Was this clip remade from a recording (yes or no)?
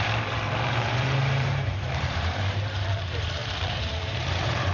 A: yes